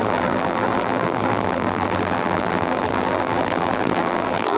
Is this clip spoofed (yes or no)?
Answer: yes